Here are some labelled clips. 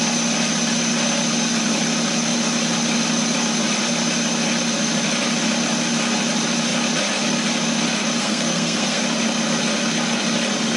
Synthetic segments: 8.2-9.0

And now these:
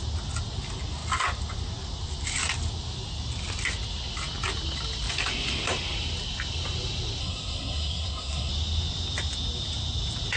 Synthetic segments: 7.2-8.5

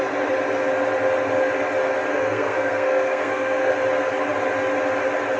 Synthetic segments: 2.1-3.7

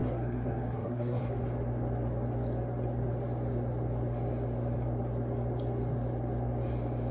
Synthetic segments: 0.0-1.2